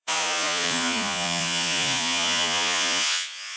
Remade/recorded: remade